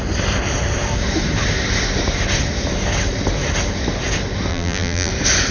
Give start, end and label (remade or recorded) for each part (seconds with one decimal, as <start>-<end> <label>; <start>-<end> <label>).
0.0-4.5 recorded; 4.5-5.1 remade; 5.1-5.5 recorded